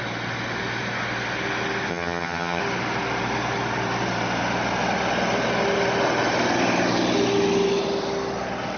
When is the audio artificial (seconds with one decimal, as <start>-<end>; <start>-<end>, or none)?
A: 1.9-2.6